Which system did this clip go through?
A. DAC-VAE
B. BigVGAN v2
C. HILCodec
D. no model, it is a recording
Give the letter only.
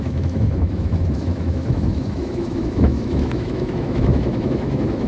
A